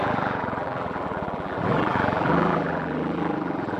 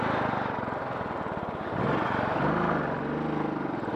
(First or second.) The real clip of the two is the second